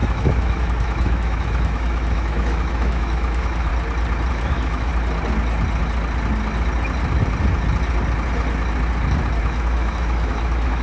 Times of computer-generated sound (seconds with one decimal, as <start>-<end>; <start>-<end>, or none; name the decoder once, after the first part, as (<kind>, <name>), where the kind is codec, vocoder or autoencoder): 0.0-3.7 (autoencoder, DAC-VAE); 4.3-4.9; 9.4-10.8